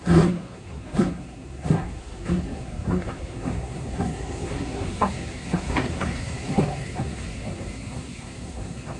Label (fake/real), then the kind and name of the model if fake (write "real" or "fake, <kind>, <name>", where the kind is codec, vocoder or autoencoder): fake, codec, SNAC